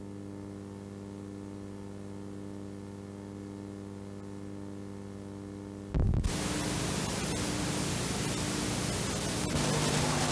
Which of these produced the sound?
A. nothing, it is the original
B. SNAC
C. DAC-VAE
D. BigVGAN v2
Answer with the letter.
A